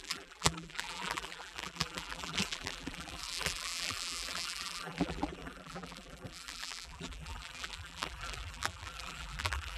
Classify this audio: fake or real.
fake